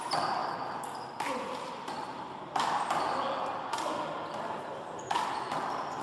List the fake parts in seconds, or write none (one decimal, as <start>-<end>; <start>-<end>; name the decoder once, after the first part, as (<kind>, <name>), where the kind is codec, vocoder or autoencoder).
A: none